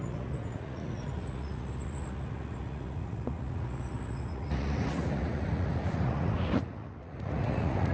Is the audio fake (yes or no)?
yes